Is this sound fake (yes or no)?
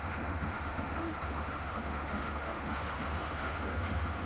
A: yes